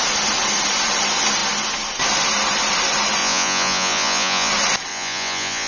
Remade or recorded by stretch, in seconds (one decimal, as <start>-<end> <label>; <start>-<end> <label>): 0.0-3.2 recorded; 3.2-4.5 remade; 4.5-4.9 recorded; 4.9-5.7 remade